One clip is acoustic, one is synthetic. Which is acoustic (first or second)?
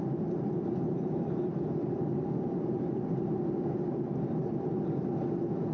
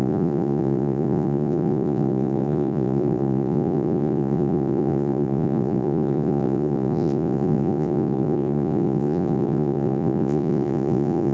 first